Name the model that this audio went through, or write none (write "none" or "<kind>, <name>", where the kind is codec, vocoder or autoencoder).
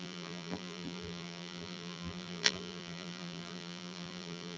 vocoder, BigVGAN v2